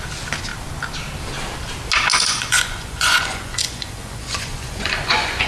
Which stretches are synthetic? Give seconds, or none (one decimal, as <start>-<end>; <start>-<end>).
2.1-5.5